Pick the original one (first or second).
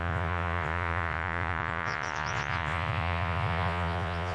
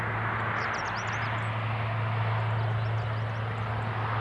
second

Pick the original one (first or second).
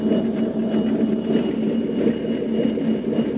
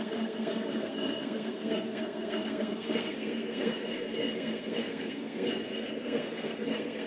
first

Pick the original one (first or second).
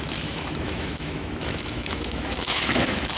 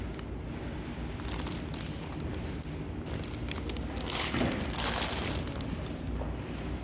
second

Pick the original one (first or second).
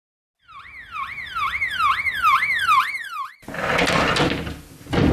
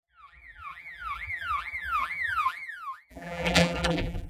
first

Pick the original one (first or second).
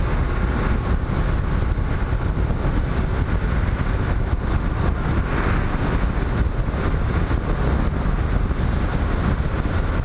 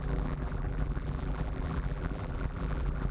first